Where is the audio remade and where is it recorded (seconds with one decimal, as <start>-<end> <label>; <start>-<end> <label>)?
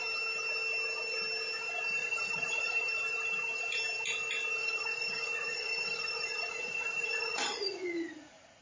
0.0-2.0 recorded; 2.0-2.8 remade; 2.8-4.6 recorded; 4.6-8.6 remade